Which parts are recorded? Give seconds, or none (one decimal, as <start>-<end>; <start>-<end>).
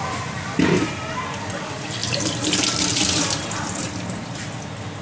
0.0-2.0; 4.3-5.0